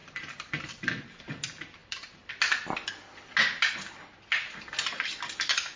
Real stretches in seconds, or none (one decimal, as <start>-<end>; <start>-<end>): 1.4-1.8; 2.3-5.8